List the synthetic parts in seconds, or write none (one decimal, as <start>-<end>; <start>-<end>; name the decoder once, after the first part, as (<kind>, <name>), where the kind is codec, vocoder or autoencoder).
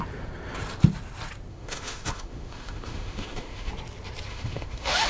1.5-3.7 (autoencoder, DAC-VAE); 4.3-5.1